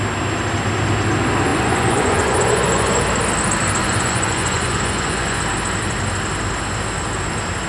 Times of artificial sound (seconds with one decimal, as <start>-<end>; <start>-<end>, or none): 1.5-3.0; 3.8-5.4